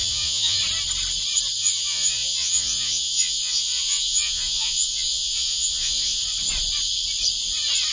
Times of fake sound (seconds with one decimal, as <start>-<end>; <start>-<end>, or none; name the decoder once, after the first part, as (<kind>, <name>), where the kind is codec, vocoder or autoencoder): 0.0-0.6 (vocoder, Vocos); 1.6-6.2